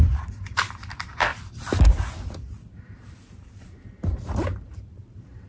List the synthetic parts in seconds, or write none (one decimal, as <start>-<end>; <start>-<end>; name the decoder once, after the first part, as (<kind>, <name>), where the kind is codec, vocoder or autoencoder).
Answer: 0.0-1.3 (vocoder, BigVGAN v2); 4.6-5.5